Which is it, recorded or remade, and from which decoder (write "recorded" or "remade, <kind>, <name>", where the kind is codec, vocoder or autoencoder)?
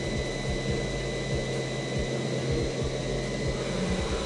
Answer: recorded